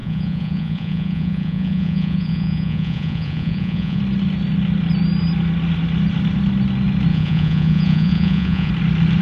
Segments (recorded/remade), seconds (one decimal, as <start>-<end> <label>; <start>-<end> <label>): 0.0-4.0 remade; 4.0-7.1 recorded; 7.1-8.7 remade; 8.7-9.2 recorded